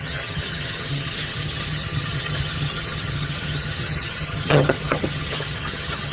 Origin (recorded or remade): remade